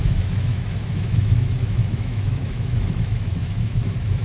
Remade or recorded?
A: remade